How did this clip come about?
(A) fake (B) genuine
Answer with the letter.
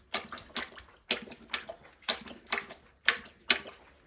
B